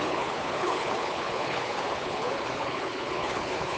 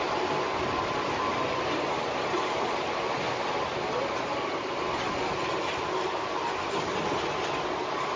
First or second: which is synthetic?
first